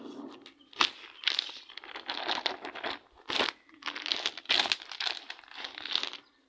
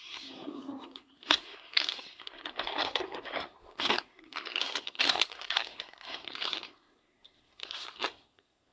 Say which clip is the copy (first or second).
second